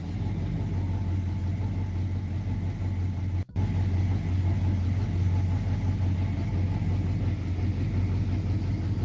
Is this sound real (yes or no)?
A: yes